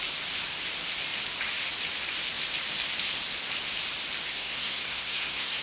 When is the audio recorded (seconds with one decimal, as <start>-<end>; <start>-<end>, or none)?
0.0-4.3